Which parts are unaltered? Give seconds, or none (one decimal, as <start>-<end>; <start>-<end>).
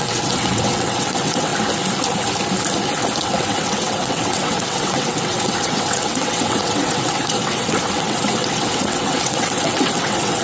1.5-3.2